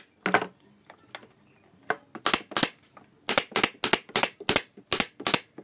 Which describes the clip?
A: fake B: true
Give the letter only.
B